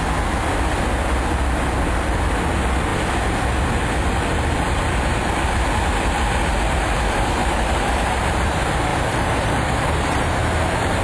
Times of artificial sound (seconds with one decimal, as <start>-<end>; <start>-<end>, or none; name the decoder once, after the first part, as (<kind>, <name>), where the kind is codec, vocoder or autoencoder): 7.4-8.2 (vocoder, BigVGAN v2); 8.9-10.3